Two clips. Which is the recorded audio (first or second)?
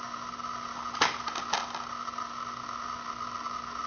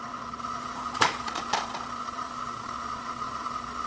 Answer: first